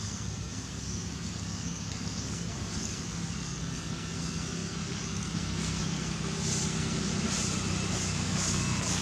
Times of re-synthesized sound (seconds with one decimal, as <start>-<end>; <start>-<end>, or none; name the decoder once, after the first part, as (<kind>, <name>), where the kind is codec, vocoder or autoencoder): 0.0-7.1 (codec, SNAC); 7.9-9.0